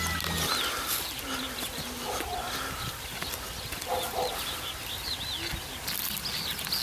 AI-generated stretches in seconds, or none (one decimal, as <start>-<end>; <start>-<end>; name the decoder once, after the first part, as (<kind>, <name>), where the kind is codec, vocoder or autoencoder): none